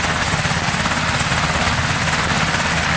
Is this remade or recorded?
recorded